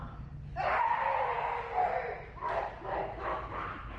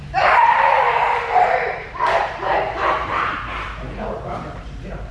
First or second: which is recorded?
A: first